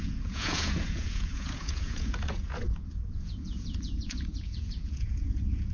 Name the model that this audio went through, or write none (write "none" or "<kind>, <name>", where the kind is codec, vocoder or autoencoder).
vocoder, Vocos